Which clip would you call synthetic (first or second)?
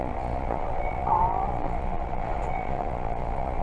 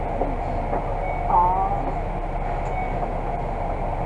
first